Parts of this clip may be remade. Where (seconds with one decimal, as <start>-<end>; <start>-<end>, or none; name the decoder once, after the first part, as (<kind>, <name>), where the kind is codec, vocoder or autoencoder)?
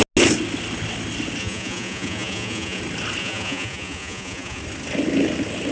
1.4-2.8 (vocoder, Vocos); 3.2-4.6